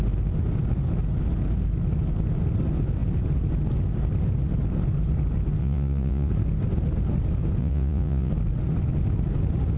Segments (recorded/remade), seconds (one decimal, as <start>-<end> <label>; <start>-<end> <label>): 0.0-5.6 recorded; 5.6-6.3 remade; 6.3-7.6 recorded; 7.6-8.3 remade; 8.3-9.8 recorded